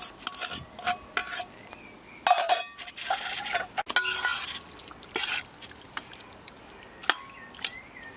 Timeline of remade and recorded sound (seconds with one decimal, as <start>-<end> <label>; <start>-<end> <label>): 0.0-8.2 recorded